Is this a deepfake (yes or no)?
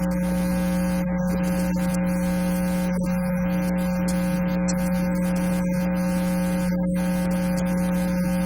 no